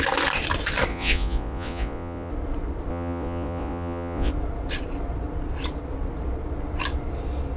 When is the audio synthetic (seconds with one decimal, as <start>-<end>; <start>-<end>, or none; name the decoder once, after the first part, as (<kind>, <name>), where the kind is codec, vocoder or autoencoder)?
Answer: 0.9-2.3 (vocoder, Vocos); 2.9-4.3